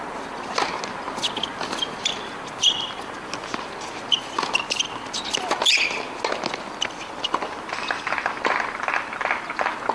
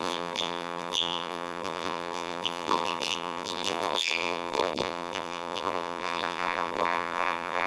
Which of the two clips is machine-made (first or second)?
second